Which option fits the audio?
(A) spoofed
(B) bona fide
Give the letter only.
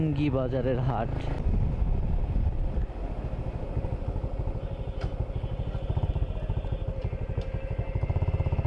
B